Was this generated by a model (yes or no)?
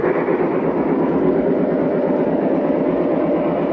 no